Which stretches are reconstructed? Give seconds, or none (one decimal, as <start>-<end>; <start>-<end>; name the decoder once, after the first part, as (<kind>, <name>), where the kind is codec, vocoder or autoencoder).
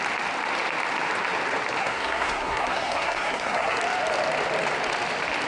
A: 1.8-3.8 (codec, SNAC)